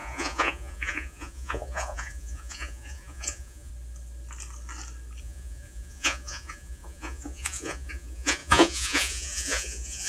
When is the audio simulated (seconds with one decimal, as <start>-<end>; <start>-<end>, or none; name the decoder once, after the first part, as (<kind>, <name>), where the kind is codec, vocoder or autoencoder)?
0.0-3.7 (vocoder, Vocos); 5.2-10.1